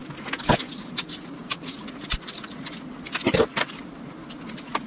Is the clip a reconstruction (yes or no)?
no